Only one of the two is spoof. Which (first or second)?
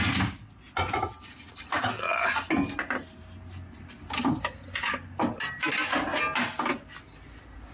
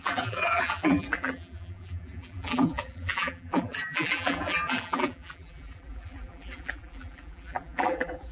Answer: second